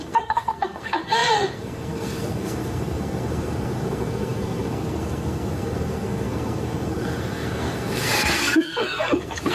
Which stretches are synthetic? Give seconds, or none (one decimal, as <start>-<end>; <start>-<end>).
0.0-9.5